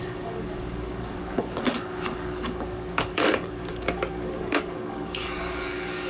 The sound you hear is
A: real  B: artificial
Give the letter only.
B